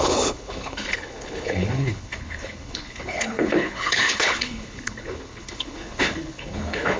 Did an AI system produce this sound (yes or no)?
yes